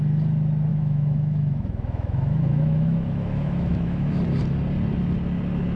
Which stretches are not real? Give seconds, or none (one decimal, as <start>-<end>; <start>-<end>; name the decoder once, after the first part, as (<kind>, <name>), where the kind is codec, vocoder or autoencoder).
0.7-4.2 (autoencoder, DAC-VAE)